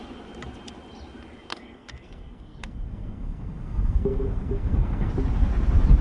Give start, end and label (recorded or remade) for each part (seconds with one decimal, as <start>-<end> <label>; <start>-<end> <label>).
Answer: 0.0-1.5 recorded; 1.5-5.1 remade; 5.1-6.0 recorded